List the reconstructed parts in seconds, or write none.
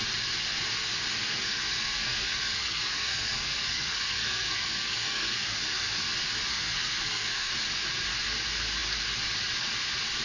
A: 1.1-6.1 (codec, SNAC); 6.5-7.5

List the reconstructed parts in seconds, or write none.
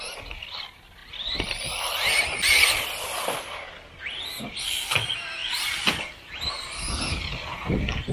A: 5.4-6.5 (vocoder, BigVGAN v2)